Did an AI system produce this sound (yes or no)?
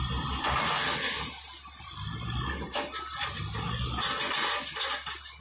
no